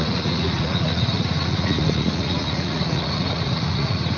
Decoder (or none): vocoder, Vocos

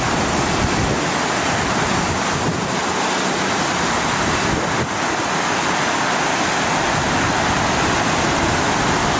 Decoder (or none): none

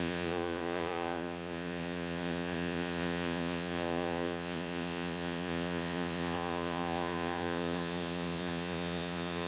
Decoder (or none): vocoder, Vocos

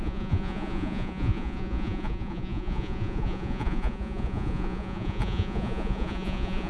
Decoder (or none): vocoder, Vocos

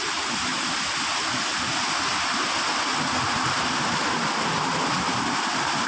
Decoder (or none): none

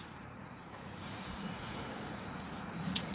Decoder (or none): vocoder, Vocos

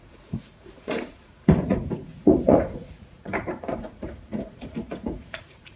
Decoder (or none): vocoder, Vocos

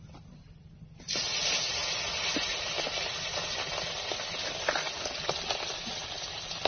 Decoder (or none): none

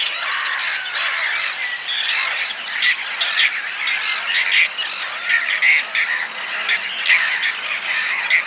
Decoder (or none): none